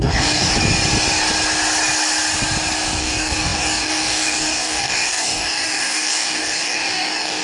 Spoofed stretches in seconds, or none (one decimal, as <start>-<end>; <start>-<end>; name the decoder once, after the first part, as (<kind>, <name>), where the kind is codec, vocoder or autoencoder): 0.0-0.5 (codec, DAC); 3.0-7.4